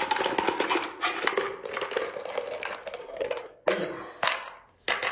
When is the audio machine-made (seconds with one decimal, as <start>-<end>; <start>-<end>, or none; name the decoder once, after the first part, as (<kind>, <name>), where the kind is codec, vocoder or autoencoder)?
3.0-3.6 (codec, SNAC)